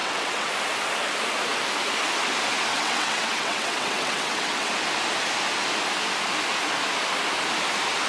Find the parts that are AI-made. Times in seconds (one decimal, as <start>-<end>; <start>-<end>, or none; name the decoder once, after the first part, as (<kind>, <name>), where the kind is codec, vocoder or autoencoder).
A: 0.0-0.5 (vocoder, WaveNeXt); 2.7-4.7